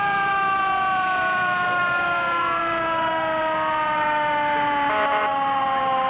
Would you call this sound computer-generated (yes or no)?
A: yes